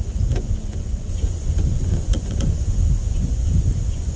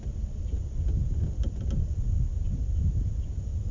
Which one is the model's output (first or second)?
first